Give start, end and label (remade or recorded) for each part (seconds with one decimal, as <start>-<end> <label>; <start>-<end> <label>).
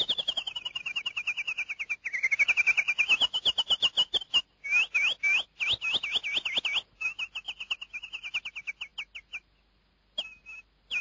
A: 0.0-11.0 recorded